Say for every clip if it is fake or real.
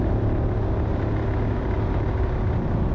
real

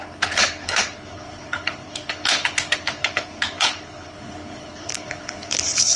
fake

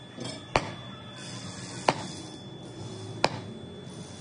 real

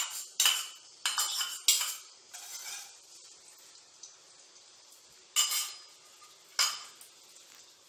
real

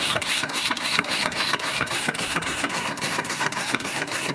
fake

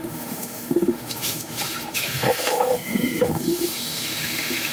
fake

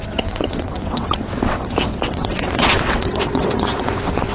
fake